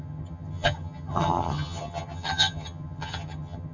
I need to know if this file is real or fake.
fake